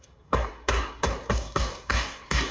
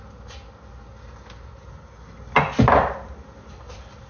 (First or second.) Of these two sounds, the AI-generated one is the first